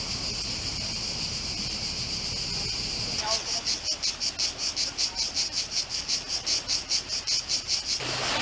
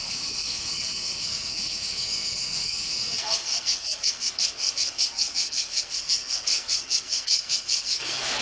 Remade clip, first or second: second